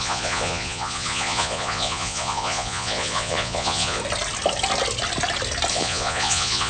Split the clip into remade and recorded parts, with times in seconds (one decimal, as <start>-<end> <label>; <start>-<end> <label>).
0.0-4.0 remade; 4.0-5.7 recorded; 5.7-6.7 remade